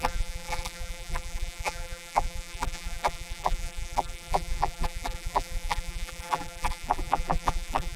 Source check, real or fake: fake